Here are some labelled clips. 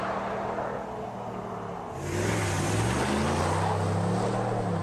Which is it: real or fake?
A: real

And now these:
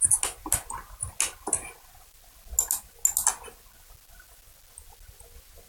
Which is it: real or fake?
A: real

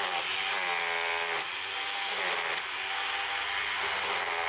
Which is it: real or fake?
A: real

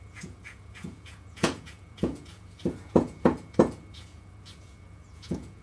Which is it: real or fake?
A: fake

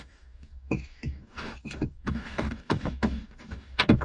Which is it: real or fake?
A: fake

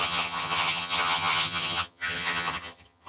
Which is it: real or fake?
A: fake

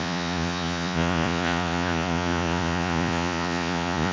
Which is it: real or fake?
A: fake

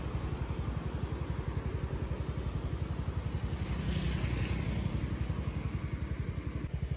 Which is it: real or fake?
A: real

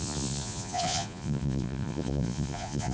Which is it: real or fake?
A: fake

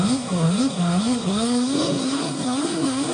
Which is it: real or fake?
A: fake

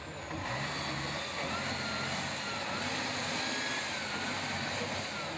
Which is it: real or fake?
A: real